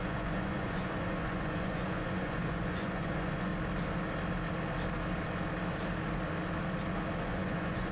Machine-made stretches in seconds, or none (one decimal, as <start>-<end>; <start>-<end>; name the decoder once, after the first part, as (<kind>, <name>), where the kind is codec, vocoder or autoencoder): 0.0-3.5 (vocoder, Vocos); 7.2-7.9